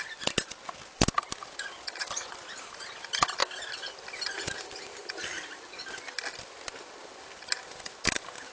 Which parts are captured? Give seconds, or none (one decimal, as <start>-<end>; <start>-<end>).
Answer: 0.0-8.5